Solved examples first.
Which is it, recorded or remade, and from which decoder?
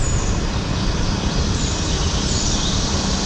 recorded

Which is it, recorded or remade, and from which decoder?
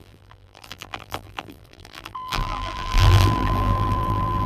remade, vocoder, BigVGAN v2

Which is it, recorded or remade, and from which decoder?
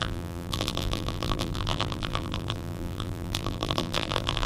remade, vocoder, BigVGAN v2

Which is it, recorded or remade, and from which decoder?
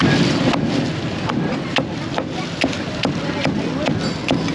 remade, vocoder, BigVGAN v2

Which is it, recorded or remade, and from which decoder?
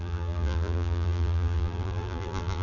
remade, vocoder, BigVGAN v2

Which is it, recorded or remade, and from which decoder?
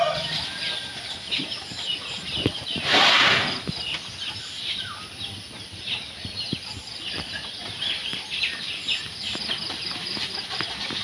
remade, vocoder, BigVGAN v2